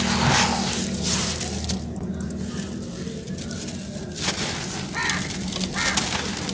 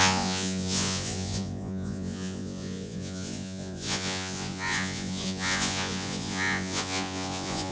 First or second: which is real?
first